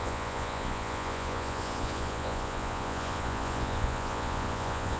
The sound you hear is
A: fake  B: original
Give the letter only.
A